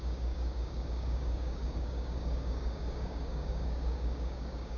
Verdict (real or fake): fake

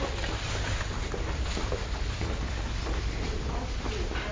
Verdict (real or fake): real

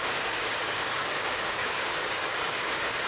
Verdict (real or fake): fake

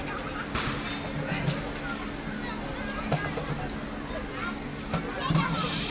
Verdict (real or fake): real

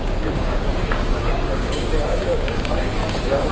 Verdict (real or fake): fake